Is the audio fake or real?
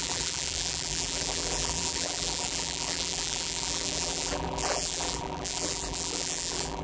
fake